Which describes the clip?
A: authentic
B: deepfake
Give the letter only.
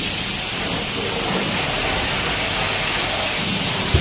A